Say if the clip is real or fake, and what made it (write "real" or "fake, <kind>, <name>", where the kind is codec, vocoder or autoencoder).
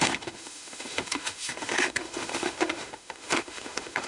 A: fake, autoencoder, DAC-VAE